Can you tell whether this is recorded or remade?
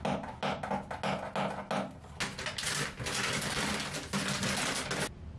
recorded